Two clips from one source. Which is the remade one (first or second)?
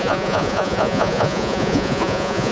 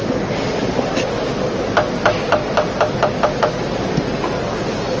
first